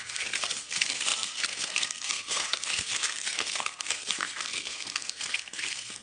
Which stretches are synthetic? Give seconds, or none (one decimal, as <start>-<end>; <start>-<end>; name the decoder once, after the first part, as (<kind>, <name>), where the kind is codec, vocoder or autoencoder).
0.0-6.0 (codec, SNAC)